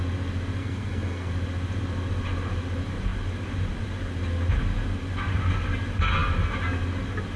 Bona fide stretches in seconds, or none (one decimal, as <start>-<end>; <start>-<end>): 0.0-0.6; 1.3-7.4